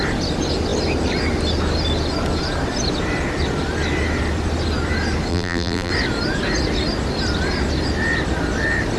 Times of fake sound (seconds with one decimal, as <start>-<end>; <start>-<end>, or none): 5.3-5.9